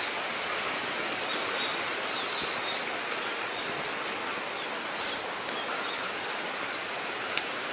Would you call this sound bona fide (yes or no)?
yes